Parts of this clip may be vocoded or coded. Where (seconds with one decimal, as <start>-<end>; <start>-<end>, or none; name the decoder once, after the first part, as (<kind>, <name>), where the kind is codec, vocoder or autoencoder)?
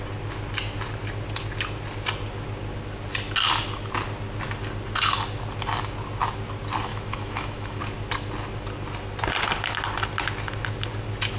6.9-7.8 (autoencoder, DAC-VAE)